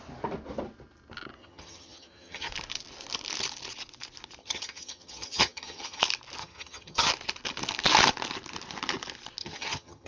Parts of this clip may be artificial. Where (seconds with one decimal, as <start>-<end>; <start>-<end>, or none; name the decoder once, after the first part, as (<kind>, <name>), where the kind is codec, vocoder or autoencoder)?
1.4-2.5 (vocoder, HiFi-GAN); 4.4-6.0; 6.4-7.1; 9.4-10.1